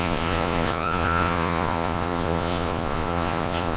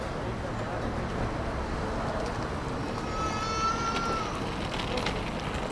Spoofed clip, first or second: first